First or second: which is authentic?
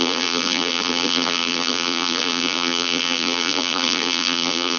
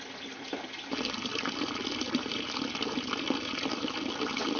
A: second